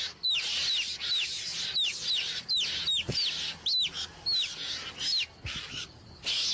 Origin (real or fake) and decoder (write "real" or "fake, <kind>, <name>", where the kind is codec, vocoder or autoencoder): real